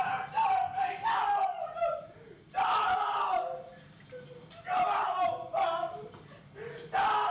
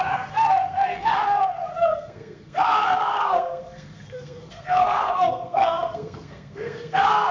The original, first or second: first